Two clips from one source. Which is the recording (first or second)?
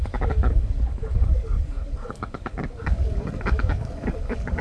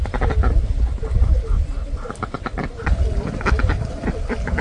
second